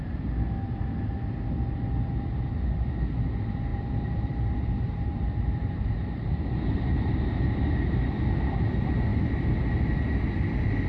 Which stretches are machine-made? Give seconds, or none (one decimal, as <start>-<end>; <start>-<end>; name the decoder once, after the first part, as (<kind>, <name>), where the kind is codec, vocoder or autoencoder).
3.7-8.1 (vocoder, BigVGAN v2)